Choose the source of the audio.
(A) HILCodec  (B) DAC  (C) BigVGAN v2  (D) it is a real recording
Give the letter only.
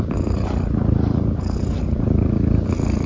D